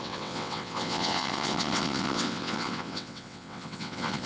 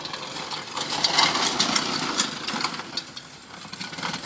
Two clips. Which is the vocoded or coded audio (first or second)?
first